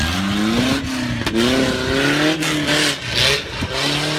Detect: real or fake real